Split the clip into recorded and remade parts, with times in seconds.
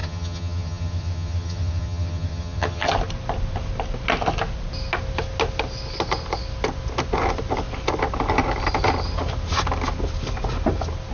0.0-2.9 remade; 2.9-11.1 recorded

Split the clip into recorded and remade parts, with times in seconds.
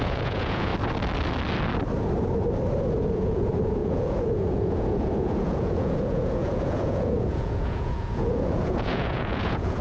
0.0-0.7 remade; 0.7-2.9 recorded; 2.9-9.8 remade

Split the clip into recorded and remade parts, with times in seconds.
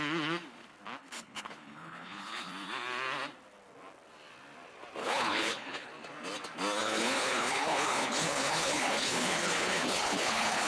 0.0-1.0 recorded; 1.0-2.5 remade; 2.5-5.0 recorded; 5.0-5.9 remade; 5.9-6.8 recorded; 6.8-10.7 remade